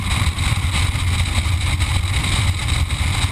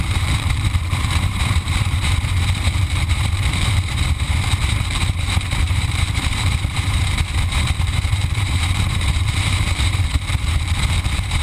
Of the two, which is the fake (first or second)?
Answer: second